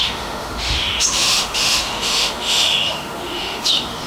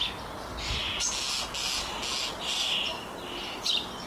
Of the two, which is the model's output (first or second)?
first